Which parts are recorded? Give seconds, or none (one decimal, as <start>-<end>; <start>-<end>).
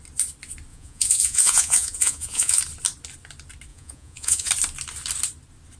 0.0-0.7; 2.6-3.7; 4.5-5.8